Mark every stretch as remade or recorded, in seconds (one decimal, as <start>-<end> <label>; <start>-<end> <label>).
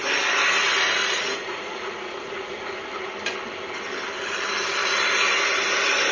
0.0-1.0 recorded; 1.0-2.9 remade; 2.9-6.1 recorded